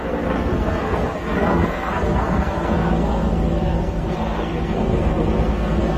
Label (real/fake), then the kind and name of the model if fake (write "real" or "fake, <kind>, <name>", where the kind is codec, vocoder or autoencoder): fake, codec, SNAC